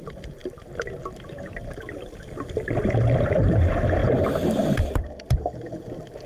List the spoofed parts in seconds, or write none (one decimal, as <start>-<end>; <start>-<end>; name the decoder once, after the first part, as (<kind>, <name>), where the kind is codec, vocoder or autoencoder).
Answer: 4.0-5.4 (vocoder, BigVGAN v2)